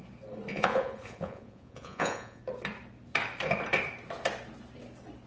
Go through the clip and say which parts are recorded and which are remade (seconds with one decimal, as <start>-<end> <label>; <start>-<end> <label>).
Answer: 0.0-0.5 recorded; 0.5-2.4 remade; 2.4-5.3 recorded